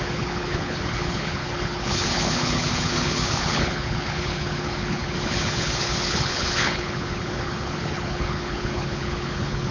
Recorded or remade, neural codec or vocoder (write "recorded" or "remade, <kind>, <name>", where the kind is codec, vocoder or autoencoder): remade, codec, HILCodec